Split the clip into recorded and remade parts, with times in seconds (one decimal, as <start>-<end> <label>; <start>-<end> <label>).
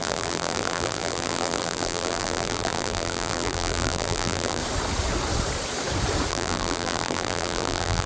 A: 0.0-4.6 remade; 4.6-6.3 recorded; 6.3-8.1 remade